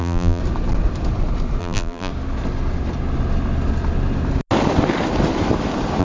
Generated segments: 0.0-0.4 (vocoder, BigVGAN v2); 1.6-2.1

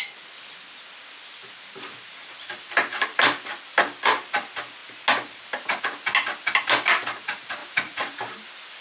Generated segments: 1.4-3.6 (vocoder, BigVGAN v2); 7.6-8.3